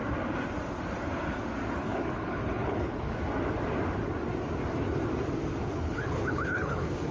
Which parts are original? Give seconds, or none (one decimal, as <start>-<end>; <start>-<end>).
0.0-1.8; 3.1-5.6